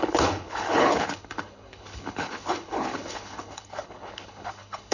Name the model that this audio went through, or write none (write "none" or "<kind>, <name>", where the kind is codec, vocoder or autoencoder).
codec, HILCodec